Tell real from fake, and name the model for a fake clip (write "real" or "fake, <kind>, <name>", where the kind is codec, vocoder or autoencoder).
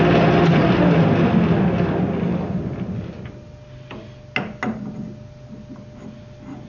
real